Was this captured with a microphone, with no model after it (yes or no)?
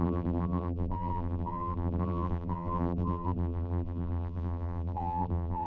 no